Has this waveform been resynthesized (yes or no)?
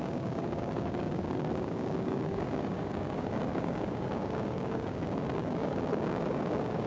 yes